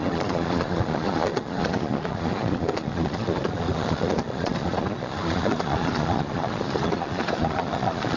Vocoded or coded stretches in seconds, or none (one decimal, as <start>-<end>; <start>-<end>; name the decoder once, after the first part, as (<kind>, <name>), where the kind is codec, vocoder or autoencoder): 0.0-8.2 (vocoder, Vocos)